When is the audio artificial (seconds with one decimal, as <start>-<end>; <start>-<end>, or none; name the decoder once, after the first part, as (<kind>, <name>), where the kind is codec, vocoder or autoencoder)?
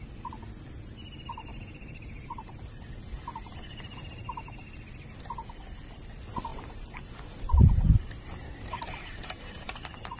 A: 1.5-2.9 (vocoder, BigVGAN v2); 3.5-4.8; 6.5-10.2